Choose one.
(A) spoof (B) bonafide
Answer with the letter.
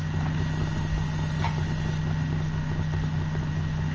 B